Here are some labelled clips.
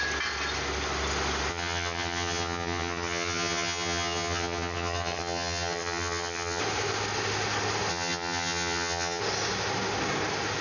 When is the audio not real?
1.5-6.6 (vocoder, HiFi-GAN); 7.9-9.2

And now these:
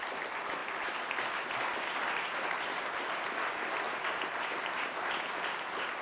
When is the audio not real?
none

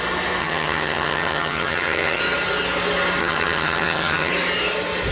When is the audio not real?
0.4-2.2 (vocoder, HiFi-GAN); 3.2-4.3